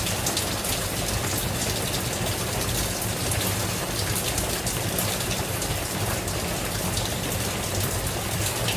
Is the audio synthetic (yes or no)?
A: no